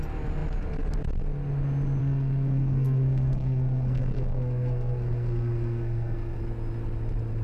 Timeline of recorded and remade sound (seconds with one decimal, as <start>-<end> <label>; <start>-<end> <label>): 0.0-2.0 recorded; 2.0-6.4 remade; 6.4-7.4 recorded